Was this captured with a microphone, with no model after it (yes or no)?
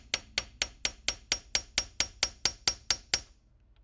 yes